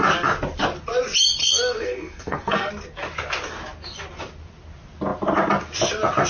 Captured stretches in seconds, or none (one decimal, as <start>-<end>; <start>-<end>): 0.0-1.4; 2.7-6.3